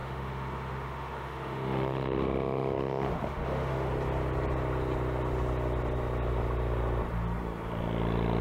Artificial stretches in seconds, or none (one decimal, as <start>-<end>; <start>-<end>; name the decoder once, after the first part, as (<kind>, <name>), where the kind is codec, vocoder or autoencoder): 0.0-3.9 (autoencoder, DAC-VAE)